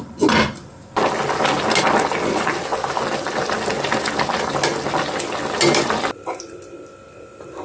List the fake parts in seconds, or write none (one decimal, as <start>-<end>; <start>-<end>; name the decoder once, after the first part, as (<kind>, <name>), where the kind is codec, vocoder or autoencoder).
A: none